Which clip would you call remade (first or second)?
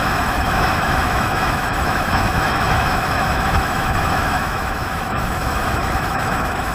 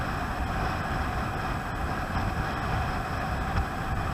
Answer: first